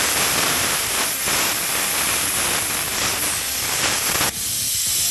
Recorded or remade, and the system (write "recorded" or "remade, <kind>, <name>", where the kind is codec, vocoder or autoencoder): recorded